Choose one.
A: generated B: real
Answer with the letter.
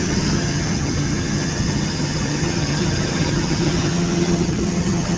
A